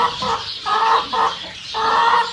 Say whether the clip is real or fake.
real